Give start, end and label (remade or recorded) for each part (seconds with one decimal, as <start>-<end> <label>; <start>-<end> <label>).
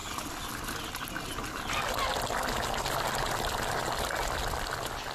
0.0-5.1 recorded